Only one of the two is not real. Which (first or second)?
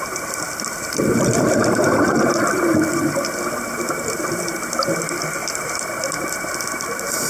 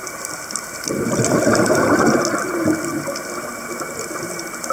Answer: first